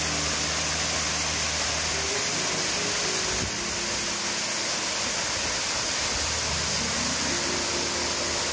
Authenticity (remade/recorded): recorded